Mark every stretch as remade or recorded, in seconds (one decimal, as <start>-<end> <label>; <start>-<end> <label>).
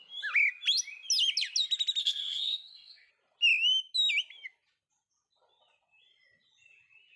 0.0-2.0 recorded; 2.0-3.1 remade; 3.1-7.2 recorded